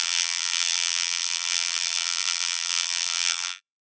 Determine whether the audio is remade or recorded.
remade